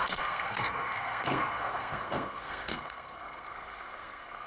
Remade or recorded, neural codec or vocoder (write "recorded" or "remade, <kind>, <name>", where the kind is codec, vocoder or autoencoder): remade, codec, SNAC